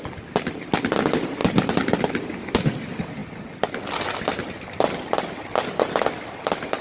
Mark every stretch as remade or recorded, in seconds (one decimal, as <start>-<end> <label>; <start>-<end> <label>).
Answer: 0.0-6.8 recorded